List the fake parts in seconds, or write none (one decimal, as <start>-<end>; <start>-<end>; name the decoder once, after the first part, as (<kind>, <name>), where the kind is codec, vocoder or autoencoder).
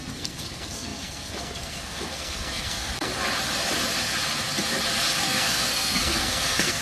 0.0-3.1 (codec, SNAC); 5.2-6.8